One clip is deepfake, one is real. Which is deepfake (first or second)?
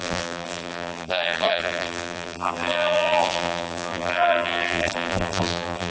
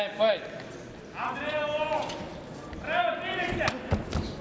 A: first